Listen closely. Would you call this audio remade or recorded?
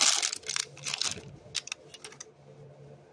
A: recorded